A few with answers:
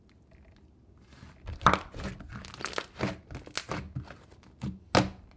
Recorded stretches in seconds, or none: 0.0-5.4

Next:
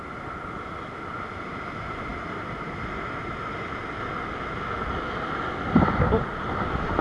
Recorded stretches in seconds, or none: 0.0-7.0

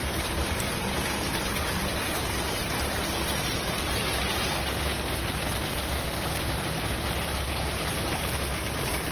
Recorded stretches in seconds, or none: 2.6-4.2; 4.9-5.7

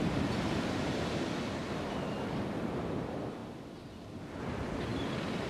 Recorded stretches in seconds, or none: 3.4-4.4

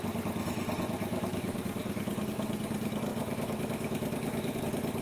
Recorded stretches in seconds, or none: 0.0-1.0; 1.8-3.1; 4.6-5.0

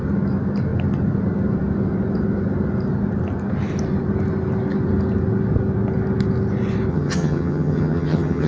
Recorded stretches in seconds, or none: 0.0-6.9

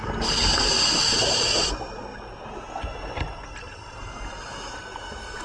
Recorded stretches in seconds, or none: 0.0-5.4